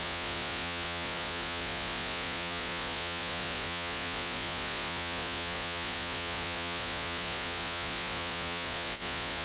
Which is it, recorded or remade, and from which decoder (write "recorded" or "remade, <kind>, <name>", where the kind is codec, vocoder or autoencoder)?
remade, vocoder, Vocos